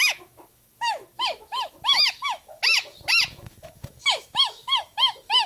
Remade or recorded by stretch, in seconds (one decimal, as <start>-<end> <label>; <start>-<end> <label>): 0.0-5.5 remade